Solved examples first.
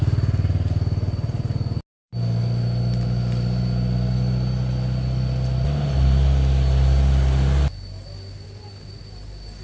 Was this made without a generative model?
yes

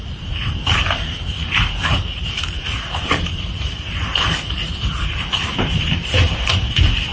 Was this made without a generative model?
no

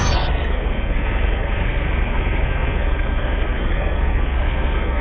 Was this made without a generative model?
no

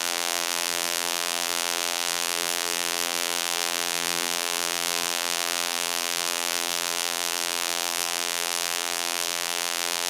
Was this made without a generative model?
no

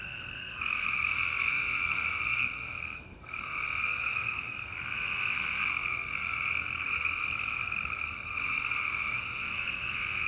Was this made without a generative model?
no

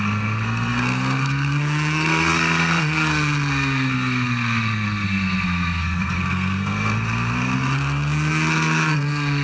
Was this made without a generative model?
no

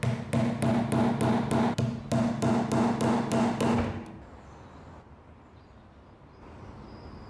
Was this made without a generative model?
yes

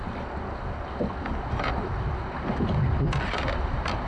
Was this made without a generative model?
yes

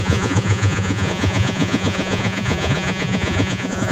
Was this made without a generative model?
no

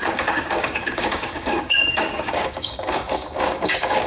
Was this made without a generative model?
no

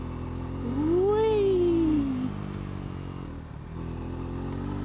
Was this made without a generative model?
yes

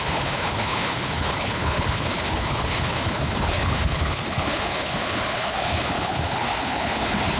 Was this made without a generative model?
no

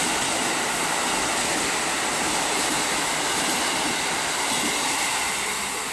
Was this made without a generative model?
yes